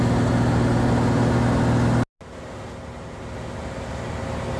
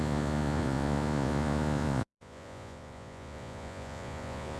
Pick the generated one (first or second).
second